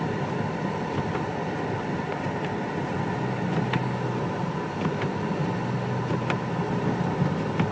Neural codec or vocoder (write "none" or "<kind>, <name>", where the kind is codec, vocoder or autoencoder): none